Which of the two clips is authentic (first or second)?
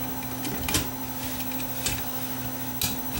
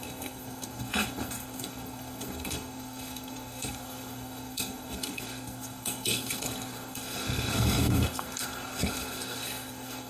first